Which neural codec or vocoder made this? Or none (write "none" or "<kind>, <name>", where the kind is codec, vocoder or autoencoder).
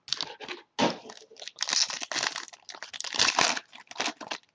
none